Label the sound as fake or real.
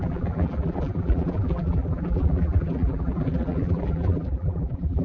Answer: fake